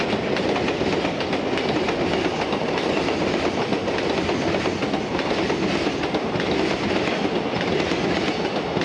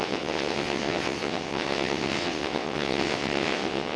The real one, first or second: first